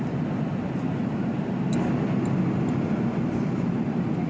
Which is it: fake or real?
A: real